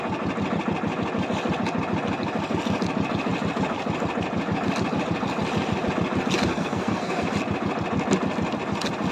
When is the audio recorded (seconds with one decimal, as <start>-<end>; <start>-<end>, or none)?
0.0-6.5; 7.3-9.1